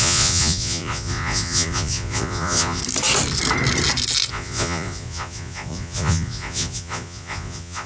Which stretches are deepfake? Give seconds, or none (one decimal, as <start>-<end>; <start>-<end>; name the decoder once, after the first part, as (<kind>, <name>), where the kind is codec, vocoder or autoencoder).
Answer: 0.0-2.8 (vocoder, Vocos); 4.3-7.9